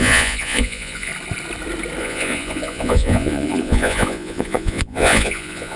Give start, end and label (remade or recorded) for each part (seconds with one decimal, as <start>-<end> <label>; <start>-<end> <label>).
0.0-1.1 remade; 1.1-2.0 recorded; 2.0-5.8 remade